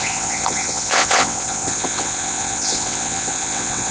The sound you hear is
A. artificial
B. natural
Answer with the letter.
A